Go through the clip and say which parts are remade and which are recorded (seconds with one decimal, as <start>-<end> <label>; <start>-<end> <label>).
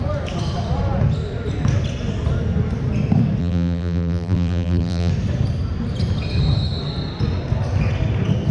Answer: 0.0-3.4 recorded; 3.4-5.1 remade; 5.1-8.5 recorded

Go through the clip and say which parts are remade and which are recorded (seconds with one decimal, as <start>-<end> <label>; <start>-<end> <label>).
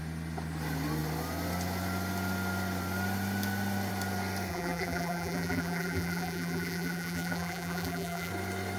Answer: 0.0-4.5 recorded; 4.5-8.3 remade; 8.3-8.8 recorded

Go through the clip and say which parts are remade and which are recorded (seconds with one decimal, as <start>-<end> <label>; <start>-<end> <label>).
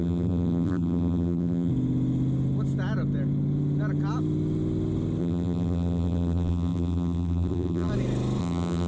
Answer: 0.0-1.7 remade; 1.7-5.2 recorded; 5.2-7.9 remade; 7.9-8.4 recorded; 8.4-8.9 remade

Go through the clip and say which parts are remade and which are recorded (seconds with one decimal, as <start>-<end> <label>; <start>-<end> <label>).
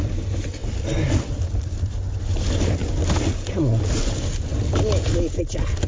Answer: 0.0-5.9 recorded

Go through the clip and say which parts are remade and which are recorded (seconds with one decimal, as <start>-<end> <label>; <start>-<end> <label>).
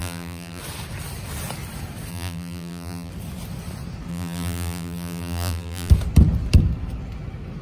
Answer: 0.0-0.6 remade; 0.6-2.1 recorded; 2.1-3.1 remade; 3.1-4.1 recorded; 4.1-5.9 remade; 5.9-7.6 recorded